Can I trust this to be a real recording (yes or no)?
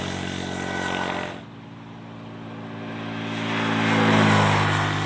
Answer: yes